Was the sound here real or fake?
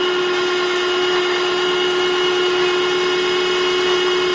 real